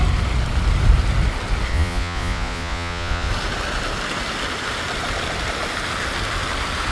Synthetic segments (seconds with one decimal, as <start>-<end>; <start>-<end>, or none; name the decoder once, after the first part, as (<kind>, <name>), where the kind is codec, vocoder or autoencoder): 1.7-3.3 (vocoder, Vocos)